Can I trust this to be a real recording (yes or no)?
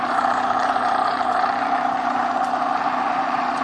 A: no